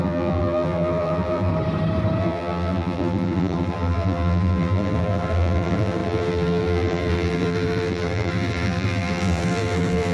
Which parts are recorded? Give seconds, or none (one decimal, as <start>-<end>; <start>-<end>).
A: 1.5-2.2